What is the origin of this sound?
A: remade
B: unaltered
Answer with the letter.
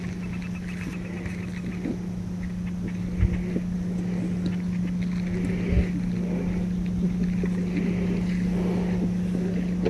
B